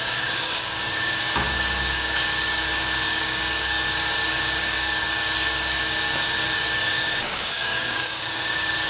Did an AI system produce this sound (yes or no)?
yes